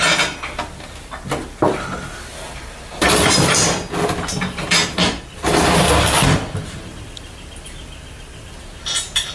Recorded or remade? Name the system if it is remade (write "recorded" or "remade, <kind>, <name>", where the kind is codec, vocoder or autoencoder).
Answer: recorded